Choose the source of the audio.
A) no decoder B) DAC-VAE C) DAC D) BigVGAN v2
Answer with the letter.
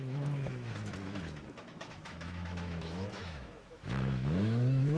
B